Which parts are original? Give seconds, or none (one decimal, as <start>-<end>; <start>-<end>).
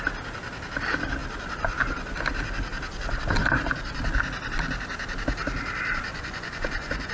0.0-6.1